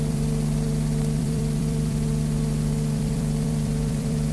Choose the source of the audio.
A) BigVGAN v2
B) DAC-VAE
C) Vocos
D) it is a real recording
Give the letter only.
A